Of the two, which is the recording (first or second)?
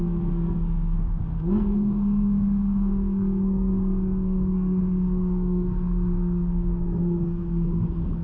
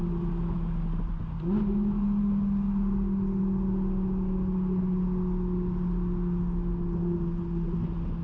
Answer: second